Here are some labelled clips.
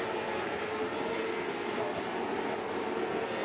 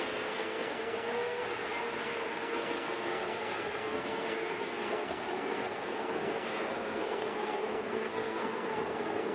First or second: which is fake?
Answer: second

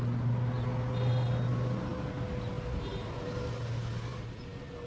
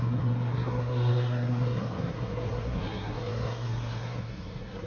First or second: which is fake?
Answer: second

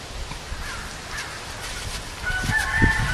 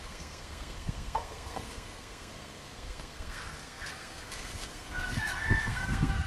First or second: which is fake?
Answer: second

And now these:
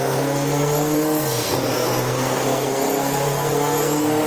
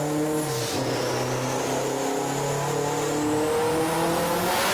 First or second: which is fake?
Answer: first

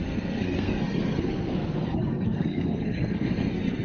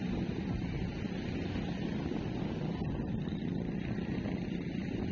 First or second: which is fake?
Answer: first